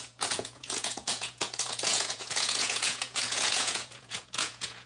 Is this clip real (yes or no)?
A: no